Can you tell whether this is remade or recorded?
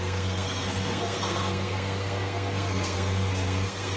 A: remade